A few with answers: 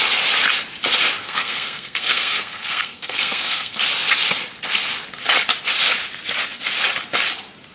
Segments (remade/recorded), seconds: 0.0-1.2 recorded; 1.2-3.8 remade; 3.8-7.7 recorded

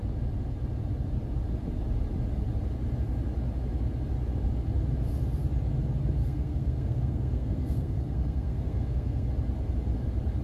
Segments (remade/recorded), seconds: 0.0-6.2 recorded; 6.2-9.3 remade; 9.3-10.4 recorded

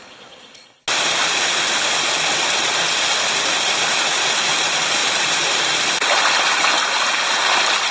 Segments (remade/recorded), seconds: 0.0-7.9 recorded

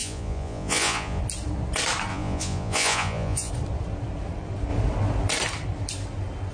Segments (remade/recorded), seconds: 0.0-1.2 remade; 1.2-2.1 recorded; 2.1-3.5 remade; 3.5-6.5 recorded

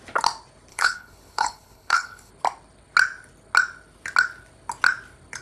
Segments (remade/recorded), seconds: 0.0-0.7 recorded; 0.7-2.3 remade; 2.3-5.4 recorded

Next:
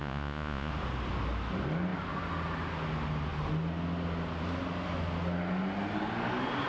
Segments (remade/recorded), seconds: 0.0-0.7 remade; 0.7-6.7 recorded

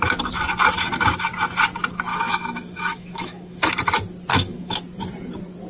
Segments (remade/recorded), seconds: 0.0-2.1 recorded; 2.1-3.7 remade; 3.7-4.3 recorded; 4.3-4.8 remade; 4.8-5.7 recorded

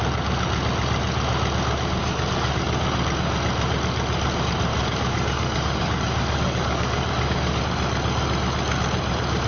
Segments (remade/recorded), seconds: 0.0-2.0 recorded; 2.0-2.8 remade; 2.8-4.7 recorded; 4.7-7.6 remade; 7.6-9.5 recorded